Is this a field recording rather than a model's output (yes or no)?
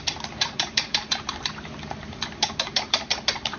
no